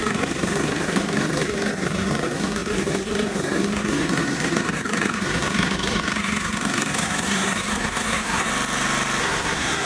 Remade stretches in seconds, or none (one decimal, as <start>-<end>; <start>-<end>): 0.0-8.5; 9.2-9.9